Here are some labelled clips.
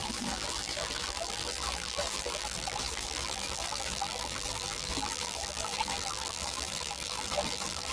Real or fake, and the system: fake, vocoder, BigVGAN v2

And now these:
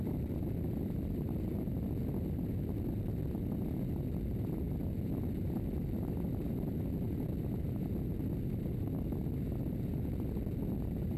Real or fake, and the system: real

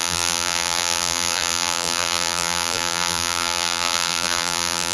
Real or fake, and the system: fake, vocoder, BigVGAN v2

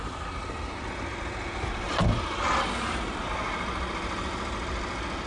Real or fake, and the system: real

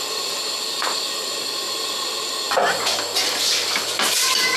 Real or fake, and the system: real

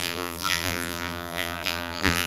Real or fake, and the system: fake, vocoder, BigVGAN v2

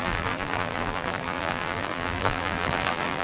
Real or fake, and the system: fake, vocoder, BigVGAN v2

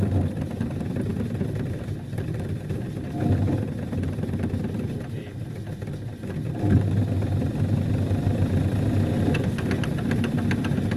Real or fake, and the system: real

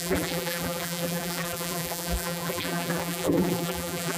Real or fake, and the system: fake, vocoder, BigVGAN v2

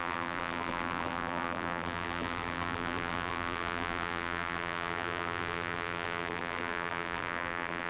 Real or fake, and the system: fake, vocoder, BigVGAN v2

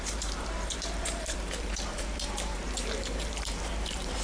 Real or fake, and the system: fake, vocoder, BigVGAN v2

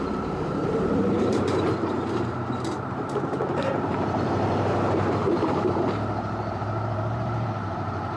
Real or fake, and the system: fake, vocoder, BigVGAN v2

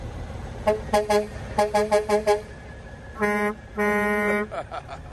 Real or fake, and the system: fake, vocoder, BigVGAN v2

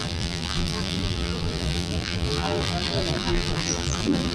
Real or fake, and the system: fake, vocoder, BigVGAN v2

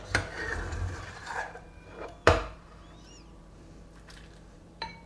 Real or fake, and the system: fake, vocoder, BigVGAN v2